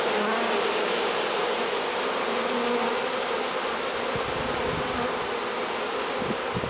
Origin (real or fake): real